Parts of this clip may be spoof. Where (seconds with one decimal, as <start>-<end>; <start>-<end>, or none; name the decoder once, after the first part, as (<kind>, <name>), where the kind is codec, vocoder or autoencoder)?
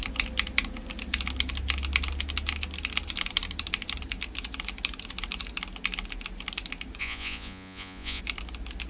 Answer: 7.0-8.2 (vocoder, Vocos)